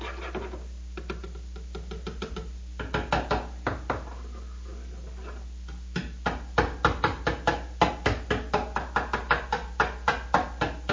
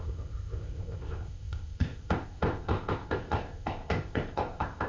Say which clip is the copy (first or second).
second